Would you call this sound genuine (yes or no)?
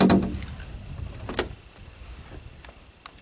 yes